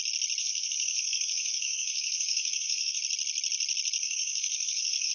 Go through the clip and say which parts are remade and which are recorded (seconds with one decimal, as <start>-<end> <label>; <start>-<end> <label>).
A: 0.0-0.4 recorded; 0.4-3.0 remade; 3.0-4.0 recorded; 4.0-5.1 remade